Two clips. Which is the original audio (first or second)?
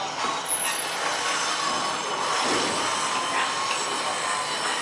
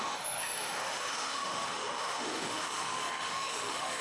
first